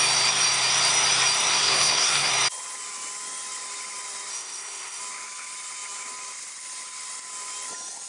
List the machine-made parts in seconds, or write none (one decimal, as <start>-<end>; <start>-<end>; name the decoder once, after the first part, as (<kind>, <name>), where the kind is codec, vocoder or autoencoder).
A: 1.5-2.3 (codec, SNAC); 4.3-5.0